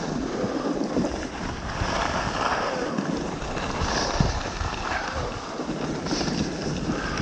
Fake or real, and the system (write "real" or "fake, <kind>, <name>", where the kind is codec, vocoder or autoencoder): real